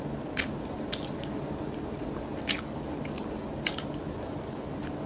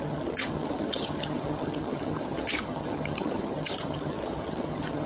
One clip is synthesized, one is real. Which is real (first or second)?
first